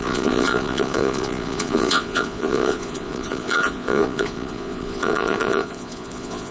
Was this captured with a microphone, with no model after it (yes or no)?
no